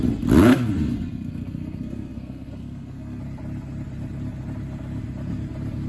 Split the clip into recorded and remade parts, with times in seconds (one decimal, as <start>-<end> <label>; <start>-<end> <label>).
0.0-0.5 recorded; 0.5-3.2 remade; 3.2-5.9 recorded